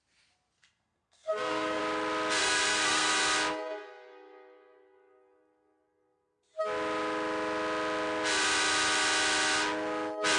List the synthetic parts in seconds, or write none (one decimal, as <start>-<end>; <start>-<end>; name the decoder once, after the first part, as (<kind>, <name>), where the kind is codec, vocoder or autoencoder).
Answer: 0.6-1.8 (codec, SNAC); 2.4-3.1